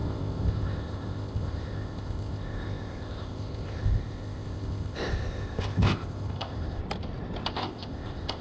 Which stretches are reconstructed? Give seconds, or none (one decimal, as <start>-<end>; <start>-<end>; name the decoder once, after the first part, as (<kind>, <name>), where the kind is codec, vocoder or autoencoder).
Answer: 0.0-6.8 (codec, ZipCodec); 7.5-8.4